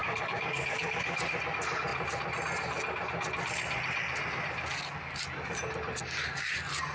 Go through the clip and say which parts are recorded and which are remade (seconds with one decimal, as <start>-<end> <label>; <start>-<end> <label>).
0.0-1.2 remade; 1.2-6.9 recorded